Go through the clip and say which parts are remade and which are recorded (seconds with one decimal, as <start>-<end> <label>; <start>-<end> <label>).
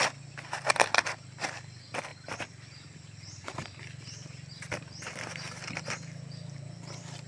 0.0-2.1 recorded; 2.1-3.6 remade; 3.6-7.3 recorded